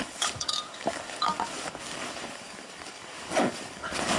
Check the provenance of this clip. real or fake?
fake